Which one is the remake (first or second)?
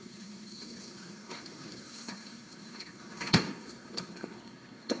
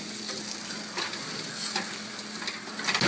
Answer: first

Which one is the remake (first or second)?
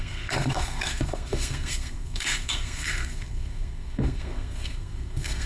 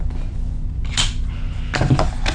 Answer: first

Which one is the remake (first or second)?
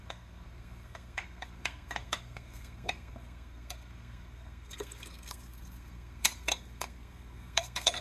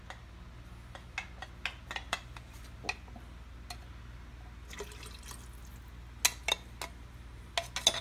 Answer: first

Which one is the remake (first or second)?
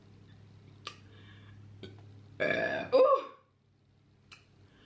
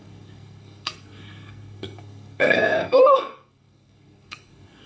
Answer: second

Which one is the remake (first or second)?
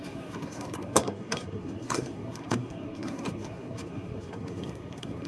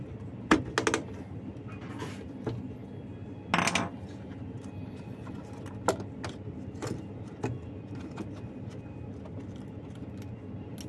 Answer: first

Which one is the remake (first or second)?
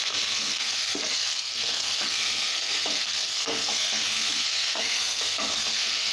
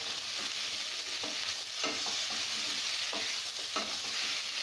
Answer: first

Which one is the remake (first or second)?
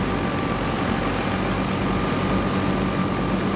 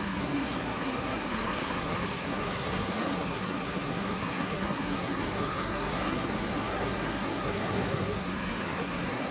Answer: second